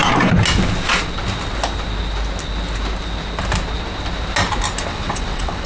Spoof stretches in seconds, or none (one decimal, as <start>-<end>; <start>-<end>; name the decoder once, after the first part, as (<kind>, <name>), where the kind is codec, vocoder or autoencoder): 4.9-5.7 (vocoder, WaveNeXt)